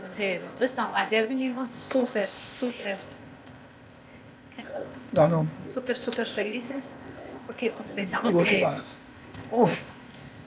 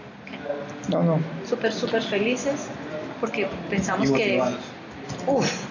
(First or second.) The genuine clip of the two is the second